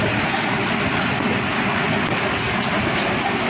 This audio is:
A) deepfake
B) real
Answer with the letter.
B